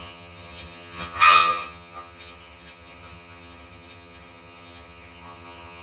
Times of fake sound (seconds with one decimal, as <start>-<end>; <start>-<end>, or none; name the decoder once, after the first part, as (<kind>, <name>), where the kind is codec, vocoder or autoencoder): 0.0-5.8 (vocoder, HiFi-GAN)